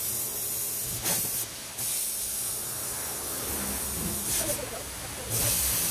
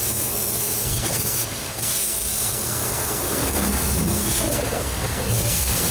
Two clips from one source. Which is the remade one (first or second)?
second